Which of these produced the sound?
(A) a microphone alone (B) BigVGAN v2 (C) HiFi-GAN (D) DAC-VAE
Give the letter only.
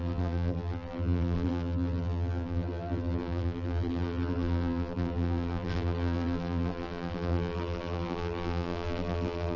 B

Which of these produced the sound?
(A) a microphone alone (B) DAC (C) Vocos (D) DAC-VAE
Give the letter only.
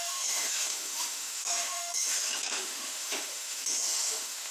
D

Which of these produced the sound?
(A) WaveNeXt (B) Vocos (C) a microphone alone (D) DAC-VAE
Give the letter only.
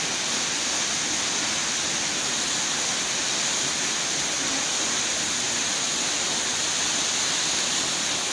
C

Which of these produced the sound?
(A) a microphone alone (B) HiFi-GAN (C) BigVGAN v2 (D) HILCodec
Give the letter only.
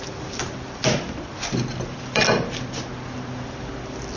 A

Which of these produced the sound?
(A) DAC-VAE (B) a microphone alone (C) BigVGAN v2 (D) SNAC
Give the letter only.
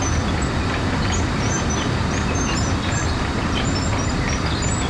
B